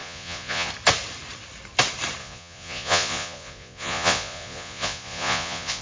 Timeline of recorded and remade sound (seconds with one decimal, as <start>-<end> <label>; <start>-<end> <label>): 0.0-0.7 remade; 0.7-2.2 recorded; 2.2-5.8 remade

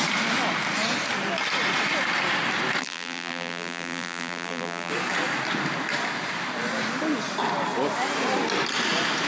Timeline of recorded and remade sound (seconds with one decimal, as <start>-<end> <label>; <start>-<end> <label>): 0.0-2.8 recorded; 2.8-4.9 remade; 4.9-9.3 recorded